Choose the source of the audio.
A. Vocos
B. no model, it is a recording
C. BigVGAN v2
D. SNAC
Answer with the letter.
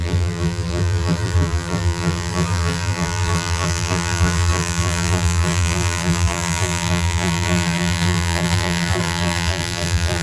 C